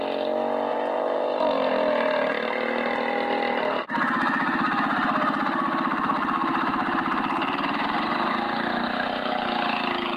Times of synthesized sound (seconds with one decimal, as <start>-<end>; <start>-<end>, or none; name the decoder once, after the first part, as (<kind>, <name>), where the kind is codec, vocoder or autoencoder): 0.7-1.7 (vocoder, BigVGAN v2); 6.5-8.3